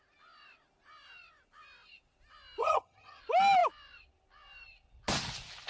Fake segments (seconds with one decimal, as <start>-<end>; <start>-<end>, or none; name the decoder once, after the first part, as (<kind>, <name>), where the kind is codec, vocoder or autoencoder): 2.6-3.2 (vocoder, HiFi-GAN)